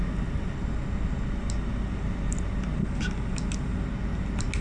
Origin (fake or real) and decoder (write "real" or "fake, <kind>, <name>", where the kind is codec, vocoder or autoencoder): real